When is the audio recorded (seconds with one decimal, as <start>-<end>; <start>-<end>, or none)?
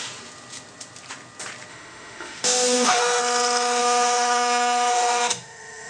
0.0-1.7; 3.2-3.8